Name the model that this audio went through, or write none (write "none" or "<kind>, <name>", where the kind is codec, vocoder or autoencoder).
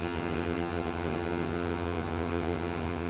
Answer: vocoder, HiFi-GAN